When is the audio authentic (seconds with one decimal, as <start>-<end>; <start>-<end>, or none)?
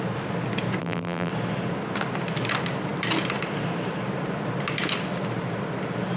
0.0-0.8; 1.3-6.2